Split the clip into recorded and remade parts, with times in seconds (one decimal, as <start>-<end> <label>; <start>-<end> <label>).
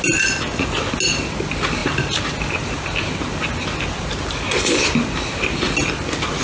0.0-6.4 recorded